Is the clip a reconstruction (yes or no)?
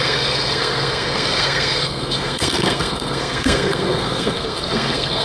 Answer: yes